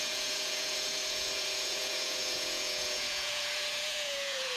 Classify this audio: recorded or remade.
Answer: remade